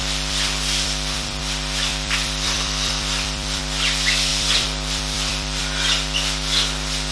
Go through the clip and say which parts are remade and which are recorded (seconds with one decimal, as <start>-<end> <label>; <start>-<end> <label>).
0.0-1.4 remade; 1.4-1.9 recorded; 1.9-3.6 remade; 3.6-4.3 recorded; 4.3-5.6 remade; 5.6-7.1 recorded